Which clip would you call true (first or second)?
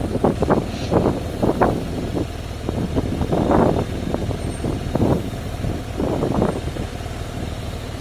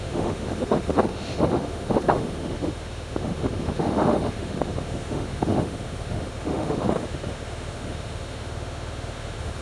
first